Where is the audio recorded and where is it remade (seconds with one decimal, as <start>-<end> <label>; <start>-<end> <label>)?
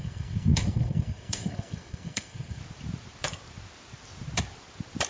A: 0.0-2.6 remade; 2.6-5.1 recorded